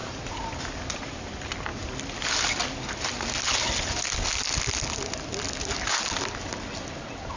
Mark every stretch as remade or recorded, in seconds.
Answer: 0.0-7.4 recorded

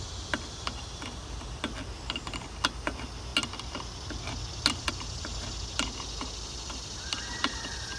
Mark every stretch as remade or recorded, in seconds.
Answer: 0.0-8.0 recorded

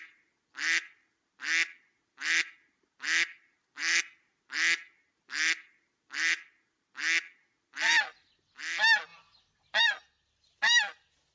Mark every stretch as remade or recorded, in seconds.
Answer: 0.0-11.3 recorded

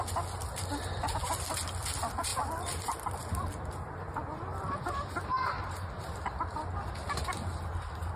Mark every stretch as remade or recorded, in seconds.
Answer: 0.0-8.2 recorded

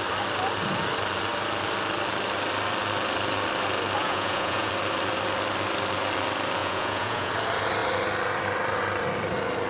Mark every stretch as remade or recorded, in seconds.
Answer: 0.0-4.0 recorded; 4.0-4.7 remade; 4.7-6.6 recorded; 6.6-7.3 remade; 7.3-9.7 recorded

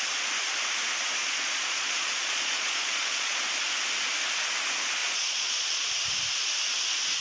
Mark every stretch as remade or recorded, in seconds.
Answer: 0.0-1.2 recorded; 1.2-3.4 remade; 3.4-5.0 recorded; 5.0-5.9 remade; 5.9-7.2 recorded